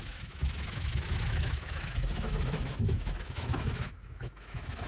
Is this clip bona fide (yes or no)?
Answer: no